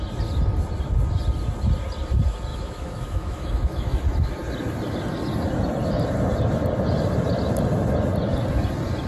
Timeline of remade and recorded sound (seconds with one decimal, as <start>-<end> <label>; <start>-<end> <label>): 0.0-2.5 recorded; 2.5-4.0 remade; 4.0-9.1 recorded